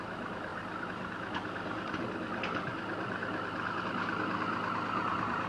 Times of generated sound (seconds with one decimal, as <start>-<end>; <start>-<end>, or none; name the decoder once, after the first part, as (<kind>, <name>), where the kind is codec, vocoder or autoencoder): none